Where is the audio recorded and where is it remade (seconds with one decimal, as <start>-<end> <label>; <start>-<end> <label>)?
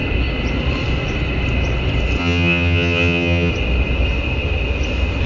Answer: 0.0-2.2 recorded; 2.2-3.5 remade; 3.5-5.3 recorded